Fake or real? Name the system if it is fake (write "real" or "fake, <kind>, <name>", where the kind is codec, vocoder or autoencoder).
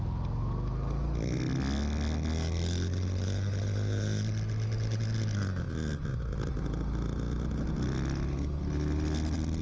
real